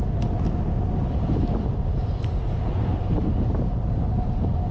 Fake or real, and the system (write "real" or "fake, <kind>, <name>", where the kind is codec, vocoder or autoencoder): real